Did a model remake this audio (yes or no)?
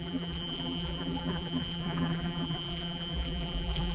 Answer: yes